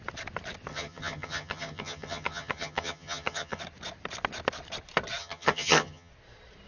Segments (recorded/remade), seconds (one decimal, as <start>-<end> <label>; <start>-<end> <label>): 0.0-0.7 recorded; 0.7-3.6 remade; 3.6-5.2 recorded; 5.2-6.1 remade; 6.1-6.7 recorded